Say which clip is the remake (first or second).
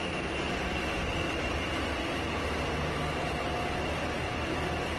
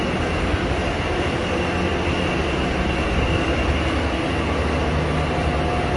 first